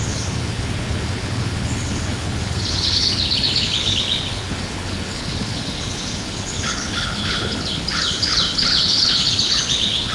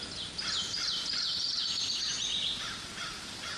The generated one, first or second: first